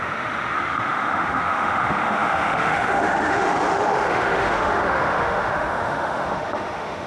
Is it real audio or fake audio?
fake